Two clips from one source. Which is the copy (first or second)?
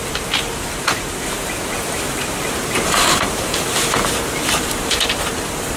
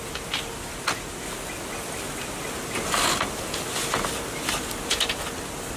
first